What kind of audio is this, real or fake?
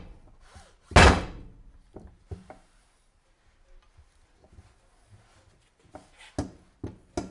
real